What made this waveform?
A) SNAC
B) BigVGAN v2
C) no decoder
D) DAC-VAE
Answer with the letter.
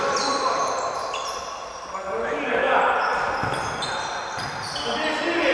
C